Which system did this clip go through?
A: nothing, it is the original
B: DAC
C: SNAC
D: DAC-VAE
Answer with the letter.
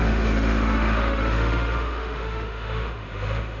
D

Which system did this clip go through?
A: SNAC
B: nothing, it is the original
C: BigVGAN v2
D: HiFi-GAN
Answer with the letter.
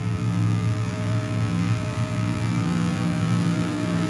C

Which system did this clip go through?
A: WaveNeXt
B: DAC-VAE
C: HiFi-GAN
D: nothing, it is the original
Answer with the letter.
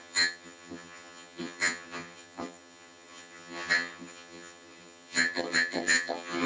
C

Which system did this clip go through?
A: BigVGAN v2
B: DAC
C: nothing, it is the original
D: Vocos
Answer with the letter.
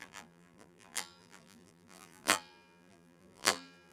A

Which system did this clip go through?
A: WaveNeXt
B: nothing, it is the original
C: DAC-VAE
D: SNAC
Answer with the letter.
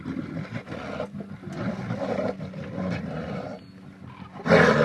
B